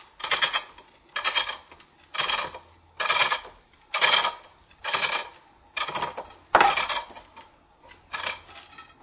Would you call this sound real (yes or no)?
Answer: yes